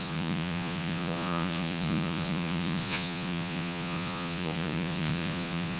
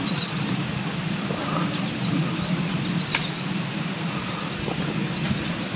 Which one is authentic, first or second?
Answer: second